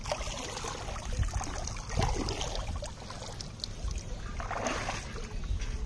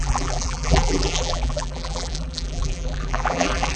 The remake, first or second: second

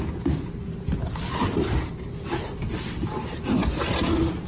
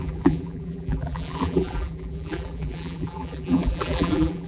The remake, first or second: second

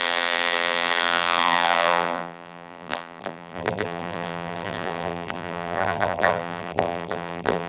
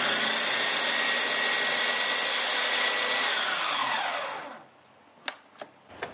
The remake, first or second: first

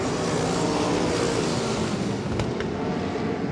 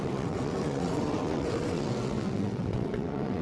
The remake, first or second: second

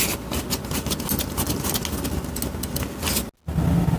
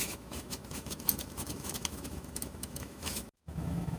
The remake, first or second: second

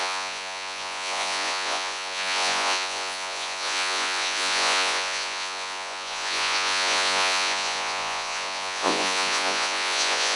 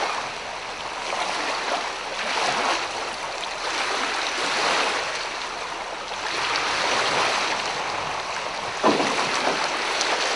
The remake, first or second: first